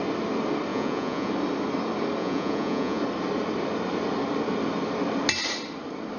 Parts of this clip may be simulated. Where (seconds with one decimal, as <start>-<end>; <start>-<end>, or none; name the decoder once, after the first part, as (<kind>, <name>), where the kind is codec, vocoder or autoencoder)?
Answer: 0.7-1.3 (vocoder, Vocos); 2.2-3.0